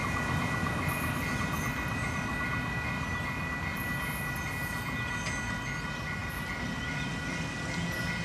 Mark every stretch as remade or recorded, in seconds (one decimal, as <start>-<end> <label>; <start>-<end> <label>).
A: 0.0-8.2 recorded